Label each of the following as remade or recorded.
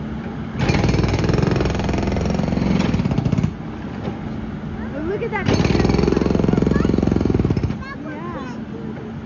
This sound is recorded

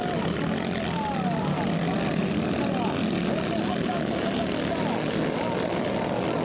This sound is recorded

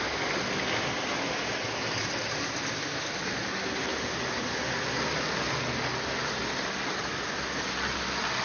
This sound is recorded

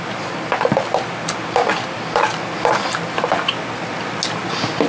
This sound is recorded